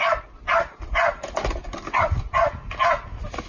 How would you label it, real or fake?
real